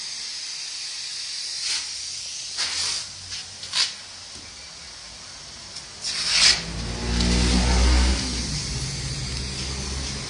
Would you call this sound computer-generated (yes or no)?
no